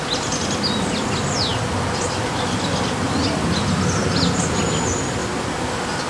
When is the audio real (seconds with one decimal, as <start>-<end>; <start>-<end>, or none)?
0.0-6.1